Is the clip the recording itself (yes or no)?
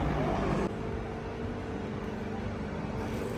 yes